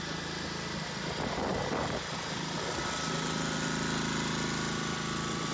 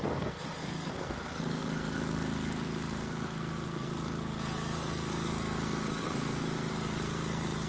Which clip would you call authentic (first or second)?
first